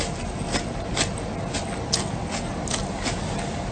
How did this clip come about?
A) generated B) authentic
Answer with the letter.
B